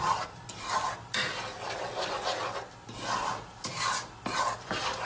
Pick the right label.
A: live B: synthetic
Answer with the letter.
A